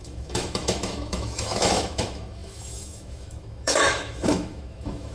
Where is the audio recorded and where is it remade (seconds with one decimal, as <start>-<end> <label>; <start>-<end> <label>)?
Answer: 0.0-5.1 remade